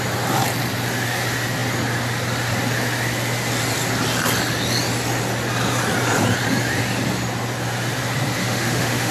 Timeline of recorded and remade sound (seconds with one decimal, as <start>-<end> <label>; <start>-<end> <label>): 0.0-8.4 recorded; 8.4-9.1 remade